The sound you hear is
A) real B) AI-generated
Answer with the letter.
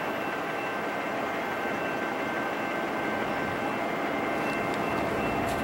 A